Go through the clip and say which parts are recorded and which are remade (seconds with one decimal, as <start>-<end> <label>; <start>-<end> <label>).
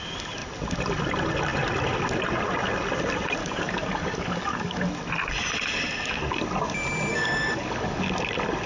0.0-3.4 recorded; 3.4-4.9 remade; 4.9-7.1 recorded; 7.1-8.0 remade; 8.0-8.7 recorded